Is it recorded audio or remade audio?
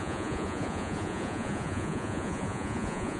remade